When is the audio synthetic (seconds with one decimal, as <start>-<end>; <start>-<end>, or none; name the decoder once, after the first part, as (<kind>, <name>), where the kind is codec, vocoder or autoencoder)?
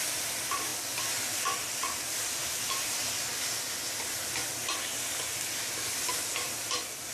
0.0-0.7 (vocoder, BigVGAN v2); 1.8-2.4; 4.0-4.6; 6.1-7.1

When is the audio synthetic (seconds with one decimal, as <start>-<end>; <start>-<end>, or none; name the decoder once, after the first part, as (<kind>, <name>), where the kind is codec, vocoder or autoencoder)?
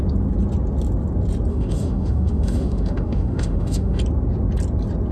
1.5-4.0 (autoencoder, DAC-VAE)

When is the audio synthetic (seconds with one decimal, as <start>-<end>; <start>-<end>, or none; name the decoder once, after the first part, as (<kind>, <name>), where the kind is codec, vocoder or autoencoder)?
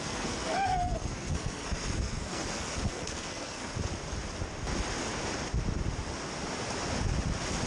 0.0-3.8 (codec, SNAC)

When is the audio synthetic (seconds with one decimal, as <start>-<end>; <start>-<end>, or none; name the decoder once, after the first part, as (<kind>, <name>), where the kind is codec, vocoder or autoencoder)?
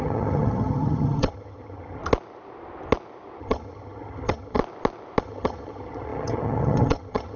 0.0-2.0 (vocoder, HiFi-GAN); 3.4-4.6; 5.2-7.4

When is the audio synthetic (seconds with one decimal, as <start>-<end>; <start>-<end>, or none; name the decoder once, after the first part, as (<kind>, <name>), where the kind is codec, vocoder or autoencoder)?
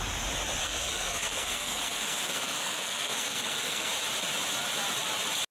0.6-3.9 (codec, SNAC)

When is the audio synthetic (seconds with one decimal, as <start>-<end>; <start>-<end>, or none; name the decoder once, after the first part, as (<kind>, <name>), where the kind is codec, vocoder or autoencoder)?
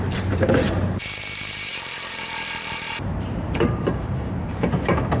0.0-5.2 (vocoder, BigVGAN v2)